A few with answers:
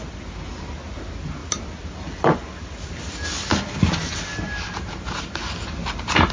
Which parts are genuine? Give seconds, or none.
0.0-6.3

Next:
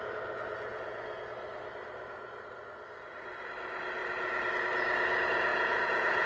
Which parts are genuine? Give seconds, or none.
0.0-0.7; 1.2-5.5